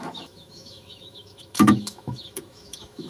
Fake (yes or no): yes